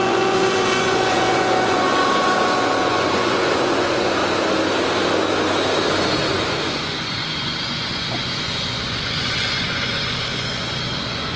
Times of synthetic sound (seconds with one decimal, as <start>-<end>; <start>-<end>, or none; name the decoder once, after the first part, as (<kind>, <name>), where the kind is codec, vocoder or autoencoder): 0.0-4.2 (vocoder, Vocos); 6.0-11.4